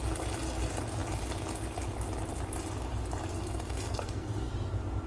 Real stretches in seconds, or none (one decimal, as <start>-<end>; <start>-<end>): 0.0-3.3; 4.5-5.1